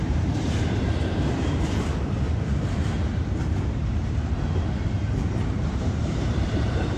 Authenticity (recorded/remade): remade